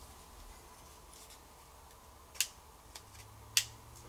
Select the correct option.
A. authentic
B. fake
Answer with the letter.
A